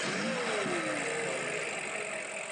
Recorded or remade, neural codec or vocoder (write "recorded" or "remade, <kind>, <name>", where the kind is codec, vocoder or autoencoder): recorded